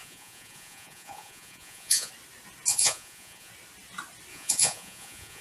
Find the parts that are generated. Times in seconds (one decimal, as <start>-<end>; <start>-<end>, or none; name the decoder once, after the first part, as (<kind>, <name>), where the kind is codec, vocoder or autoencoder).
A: 0.0-2.1 (vocoder, Vocos); 2.7-3.5; 4.3-5.4